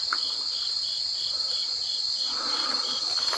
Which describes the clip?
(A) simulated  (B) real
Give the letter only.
B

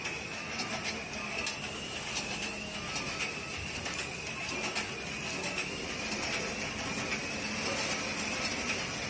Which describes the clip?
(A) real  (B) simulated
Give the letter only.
A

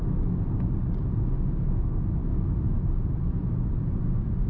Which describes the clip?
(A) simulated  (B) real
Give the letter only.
B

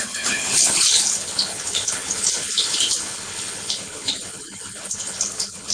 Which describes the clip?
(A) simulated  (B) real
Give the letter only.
A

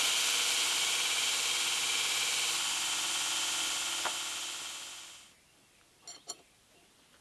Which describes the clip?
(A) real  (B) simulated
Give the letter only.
A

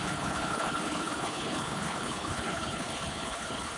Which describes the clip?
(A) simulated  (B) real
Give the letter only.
A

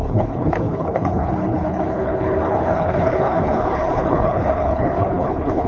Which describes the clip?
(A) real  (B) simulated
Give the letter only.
B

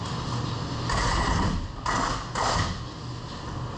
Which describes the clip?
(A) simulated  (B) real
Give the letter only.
B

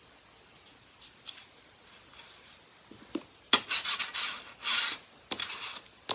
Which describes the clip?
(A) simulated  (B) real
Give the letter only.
B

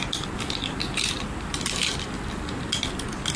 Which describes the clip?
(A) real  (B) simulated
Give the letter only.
A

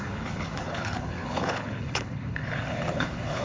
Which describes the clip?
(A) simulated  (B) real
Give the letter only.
A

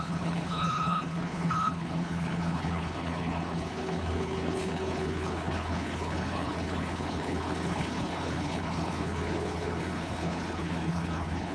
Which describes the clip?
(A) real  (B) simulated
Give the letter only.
B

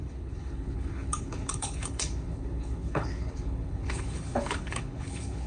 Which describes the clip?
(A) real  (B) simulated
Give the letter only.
B